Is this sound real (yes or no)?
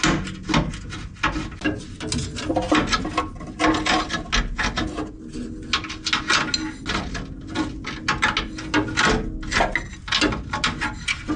yes